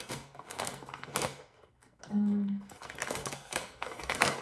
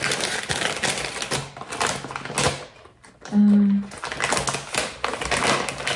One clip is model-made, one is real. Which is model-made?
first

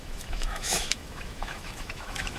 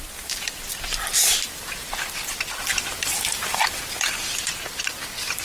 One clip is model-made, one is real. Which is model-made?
first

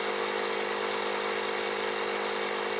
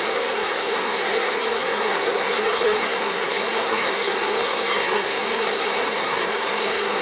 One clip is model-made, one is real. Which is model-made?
second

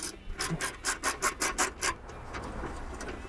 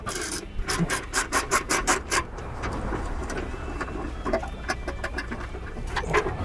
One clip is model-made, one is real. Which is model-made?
second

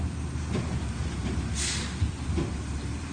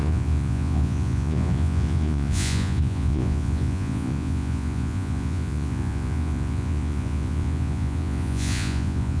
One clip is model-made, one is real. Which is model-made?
second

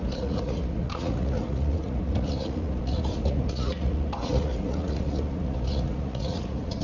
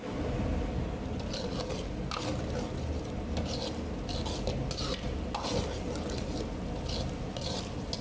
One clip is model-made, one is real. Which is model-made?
first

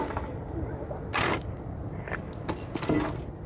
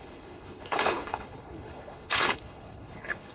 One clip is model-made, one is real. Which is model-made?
second